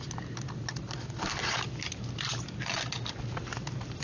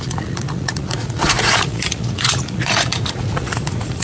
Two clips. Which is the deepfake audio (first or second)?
second